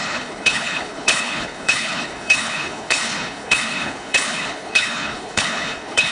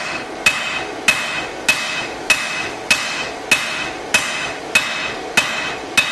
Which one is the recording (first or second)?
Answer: second